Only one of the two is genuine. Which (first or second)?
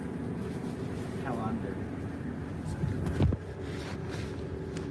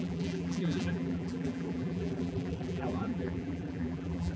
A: first